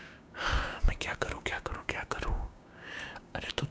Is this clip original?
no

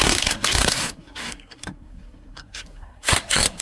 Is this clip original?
no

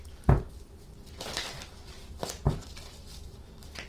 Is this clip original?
yes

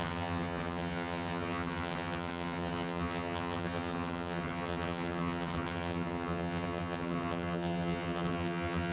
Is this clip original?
no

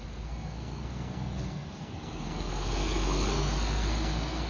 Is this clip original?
no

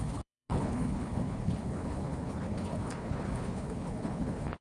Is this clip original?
no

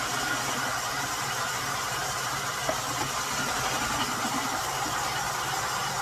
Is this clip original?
yes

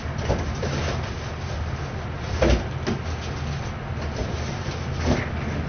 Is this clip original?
yes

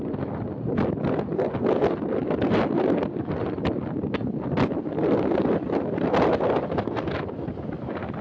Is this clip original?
yes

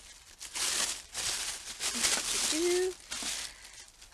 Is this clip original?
yes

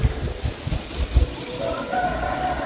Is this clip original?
yes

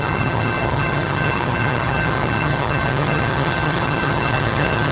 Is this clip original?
no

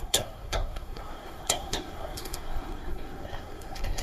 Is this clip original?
no